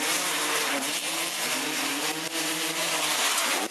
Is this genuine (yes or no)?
no